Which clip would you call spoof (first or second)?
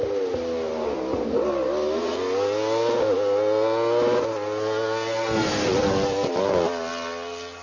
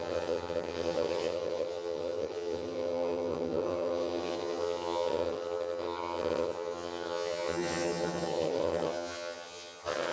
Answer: second